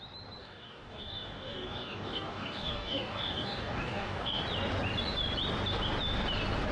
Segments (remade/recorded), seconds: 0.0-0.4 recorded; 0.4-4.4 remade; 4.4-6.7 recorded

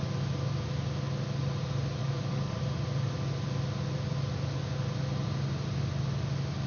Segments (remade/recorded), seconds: 0.0-2.0 recorded; 2.0-2.6 remade; 2.6-6.7 recorded

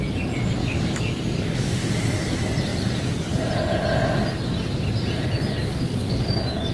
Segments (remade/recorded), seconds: 0.0-0.6 recorded; 0.6-1.9 remade; 1.9-5.7 recorded; 5.7-6.3 remade; 6.3-6.7 recorded

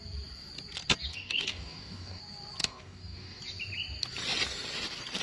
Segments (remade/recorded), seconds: 0.0-1.1 recorded; 1.1-2.2 remade; 2.2-2.6 recorded; 2.6-3.4 remade; 3.4-5.2 recorded

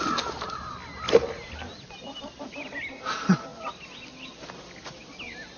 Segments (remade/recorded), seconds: 0.0-5.6 recorded

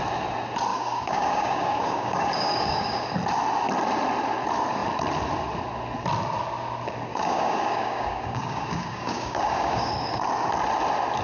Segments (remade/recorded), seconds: 0.0-0.7 recorded; 0.7-3.1 remade; 3.1-7.1 recorded; 7.1-9.9 remade; 9.9-11.2 recorded

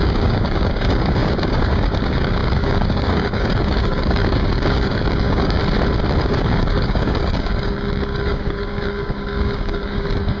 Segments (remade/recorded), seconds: 0.0-5.6 remade; 5.6-6.2 recorded; 6.2-10.4 remade